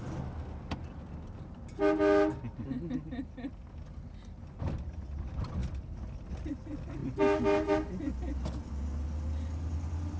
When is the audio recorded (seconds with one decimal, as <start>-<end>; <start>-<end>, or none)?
0.0-10.2